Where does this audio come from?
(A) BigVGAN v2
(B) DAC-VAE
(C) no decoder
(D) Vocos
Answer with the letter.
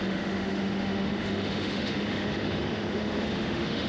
B